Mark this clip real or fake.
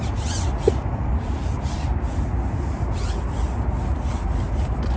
real